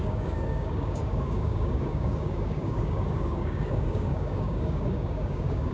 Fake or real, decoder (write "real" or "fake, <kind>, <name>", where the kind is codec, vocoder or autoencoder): fake, codec, DAC